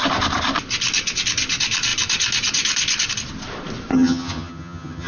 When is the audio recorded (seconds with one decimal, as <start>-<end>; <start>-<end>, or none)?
0.0-3.9